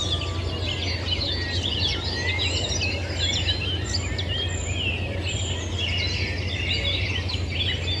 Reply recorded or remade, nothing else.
recorded